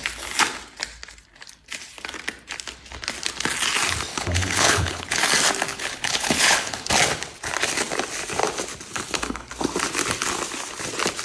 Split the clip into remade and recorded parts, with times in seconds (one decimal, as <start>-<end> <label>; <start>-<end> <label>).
0.0-4.1 recorded; 4.1-5.2 remade; 5.2-5.7 recorded; 5.7-6.9 remade; 6.9-8.9 recorded; 8.9-9.5 remade; 9.5-11.2 recorded